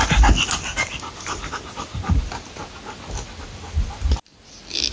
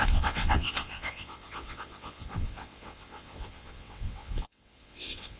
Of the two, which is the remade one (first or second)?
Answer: second